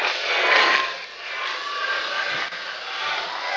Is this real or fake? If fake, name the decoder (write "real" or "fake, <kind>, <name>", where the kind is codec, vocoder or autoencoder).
real